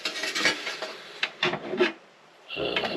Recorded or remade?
remade